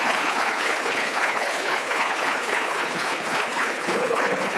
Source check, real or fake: fake